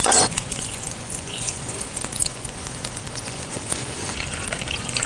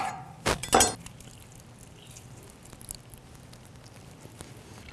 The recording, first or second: second